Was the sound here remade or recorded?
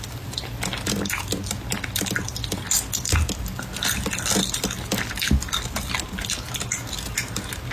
recorded